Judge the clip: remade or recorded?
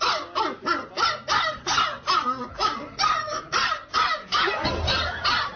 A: recorded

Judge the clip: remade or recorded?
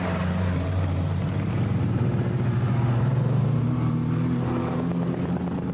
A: remade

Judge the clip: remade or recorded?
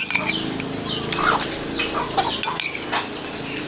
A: recorded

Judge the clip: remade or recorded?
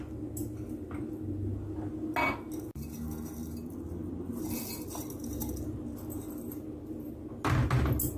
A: recorded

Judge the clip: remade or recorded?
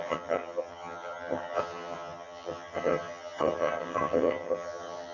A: remade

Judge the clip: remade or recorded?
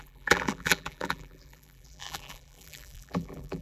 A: remade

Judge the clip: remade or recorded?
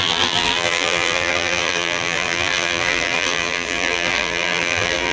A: remade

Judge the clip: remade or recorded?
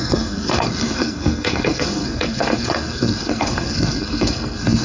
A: remade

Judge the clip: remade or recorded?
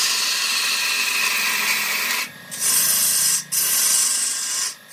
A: recorded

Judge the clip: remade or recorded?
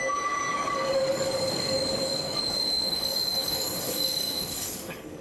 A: remade